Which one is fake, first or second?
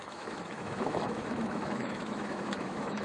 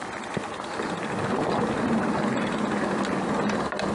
first